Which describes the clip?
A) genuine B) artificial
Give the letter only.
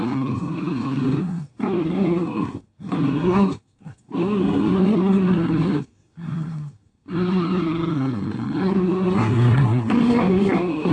B